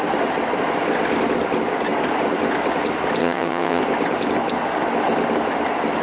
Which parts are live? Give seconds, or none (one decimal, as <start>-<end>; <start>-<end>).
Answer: 0.0-3.2; 3.8-6.0